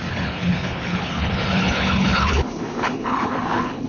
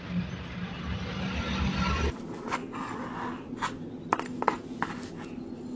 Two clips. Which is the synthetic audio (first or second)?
first